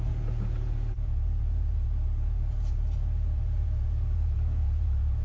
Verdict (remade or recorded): remade